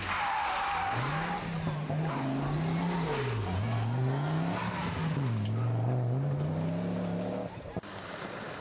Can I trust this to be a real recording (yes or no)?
yes